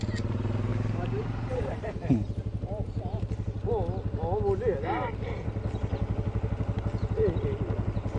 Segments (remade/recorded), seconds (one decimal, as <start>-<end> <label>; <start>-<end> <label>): 0.0-0.7 recorded; 0.7-3.7 remade; 3.7-8.2 recorded